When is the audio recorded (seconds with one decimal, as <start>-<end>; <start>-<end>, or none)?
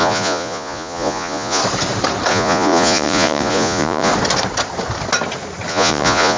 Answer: 1.6-2.3; 4.1-5.7